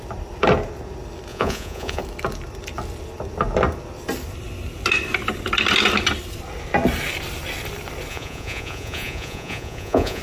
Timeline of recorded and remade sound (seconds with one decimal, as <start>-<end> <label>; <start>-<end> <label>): 0.0-1.3 recorded; 1.3-2.0 remade; 2.0-8.1 recorded; 8.1-10.2 remade